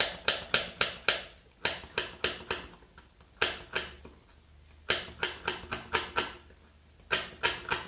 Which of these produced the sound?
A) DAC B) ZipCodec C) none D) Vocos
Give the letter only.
C